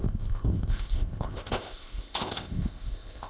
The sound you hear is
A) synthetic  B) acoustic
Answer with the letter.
A